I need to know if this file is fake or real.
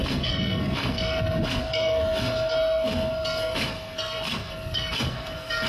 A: fake